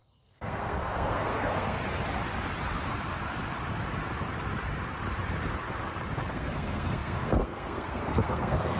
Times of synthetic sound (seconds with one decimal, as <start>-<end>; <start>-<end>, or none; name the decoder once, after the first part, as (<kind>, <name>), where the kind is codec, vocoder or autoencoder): 0.0-1.8 (codec, SNAC); 6.3-8.8